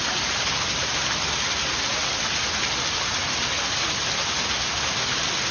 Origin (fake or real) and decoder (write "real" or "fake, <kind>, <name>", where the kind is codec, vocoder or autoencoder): real